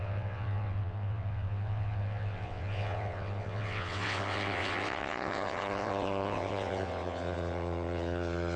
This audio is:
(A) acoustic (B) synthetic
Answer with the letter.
B